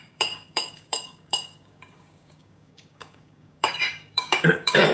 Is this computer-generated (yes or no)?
yes